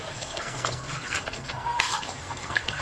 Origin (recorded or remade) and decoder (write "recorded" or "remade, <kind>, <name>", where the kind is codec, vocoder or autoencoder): remade, codec, SNAC